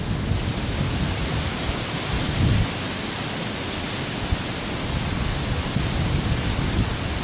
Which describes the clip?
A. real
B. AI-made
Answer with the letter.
A